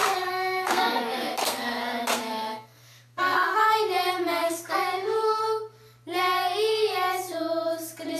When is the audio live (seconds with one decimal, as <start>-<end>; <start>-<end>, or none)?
3.6-4.4; 5.4-8.2